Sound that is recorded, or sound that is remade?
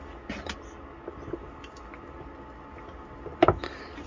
recorded